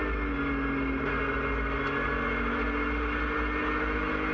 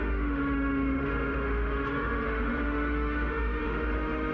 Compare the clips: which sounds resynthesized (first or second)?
second